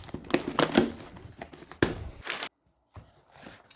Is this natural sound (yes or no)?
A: yes